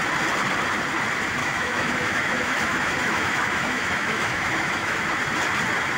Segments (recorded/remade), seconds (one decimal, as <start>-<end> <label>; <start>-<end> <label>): 0.0-1.4 recorded; 1.4-5.0 remade; 5.0-6.0 recorded